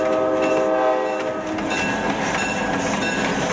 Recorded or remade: recorded